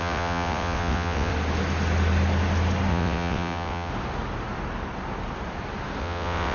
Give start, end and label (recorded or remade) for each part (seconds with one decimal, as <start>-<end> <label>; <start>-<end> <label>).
0.0-1.3 remade; 1.3-2.9 recorded; 2.9-3.9 remade; 3.9-6.0 recorded; 6.0-6.5 remade